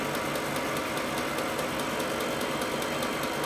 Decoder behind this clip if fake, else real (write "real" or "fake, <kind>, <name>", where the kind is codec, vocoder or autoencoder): real